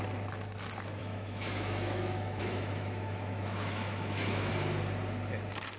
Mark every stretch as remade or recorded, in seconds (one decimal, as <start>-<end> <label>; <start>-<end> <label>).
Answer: 0.0-1.0 recorded; 1.0-4.5 remade; 4.5-5.8 recorded